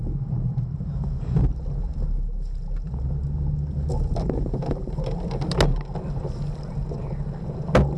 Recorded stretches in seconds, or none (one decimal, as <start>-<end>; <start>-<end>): 0.0-3.7; 5.6-8.0